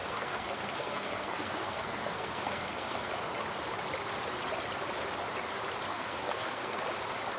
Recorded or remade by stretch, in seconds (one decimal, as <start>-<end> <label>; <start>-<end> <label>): 0.0-3.1 remade; 3.1-5.9 recorded; 5.9-6.8 remade; 6.8-7.4 recorded